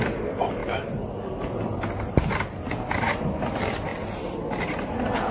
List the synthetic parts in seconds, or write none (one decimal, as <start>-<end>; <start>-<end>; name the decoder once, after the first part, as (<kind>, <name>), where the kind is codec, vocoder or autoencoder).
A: none